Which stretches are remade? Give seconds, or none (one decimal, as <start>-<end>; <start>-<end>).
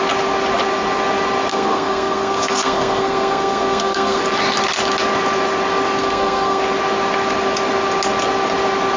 1.5-4.2; 6.0-6.6